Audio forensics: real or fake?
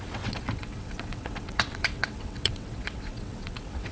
fake